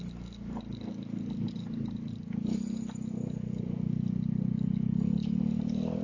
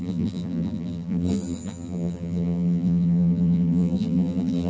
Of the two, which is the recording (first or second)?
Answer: first